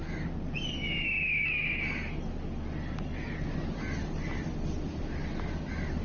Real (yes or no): yes